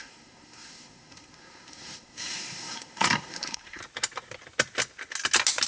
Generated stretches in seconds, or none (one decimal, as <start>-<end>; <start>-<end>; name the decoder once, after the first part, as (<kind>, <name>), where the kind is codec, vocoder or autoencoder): 0.0-3.8 (codec, SNAC)